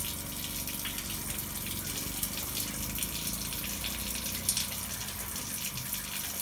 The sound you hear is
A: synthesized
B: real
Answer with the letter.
B